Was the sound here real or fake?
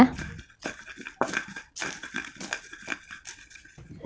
real